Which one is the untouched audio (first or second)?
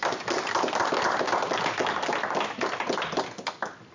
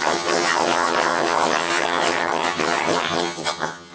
first